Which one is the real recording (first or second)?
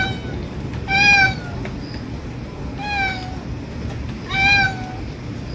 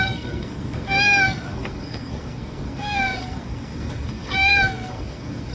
first